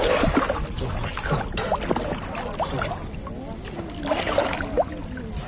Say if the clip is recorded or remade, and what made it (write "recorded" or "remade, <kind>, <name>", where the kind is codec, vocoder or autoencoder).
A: recorded